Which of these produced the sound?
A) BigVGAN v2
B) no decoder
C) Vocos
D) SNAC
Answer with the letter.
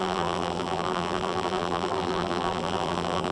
A